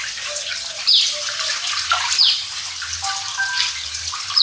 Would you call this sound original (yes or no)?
yes